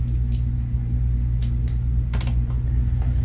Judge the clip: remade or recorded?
recorded